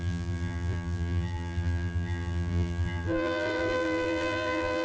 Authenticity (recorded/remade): remade